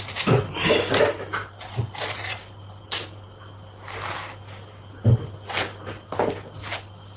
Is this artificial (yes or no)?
no